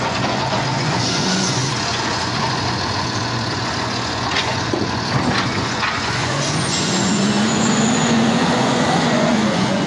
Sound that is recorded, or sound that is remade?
remade